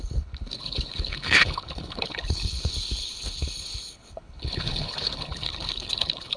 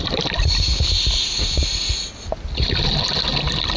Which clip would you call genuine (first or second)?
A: second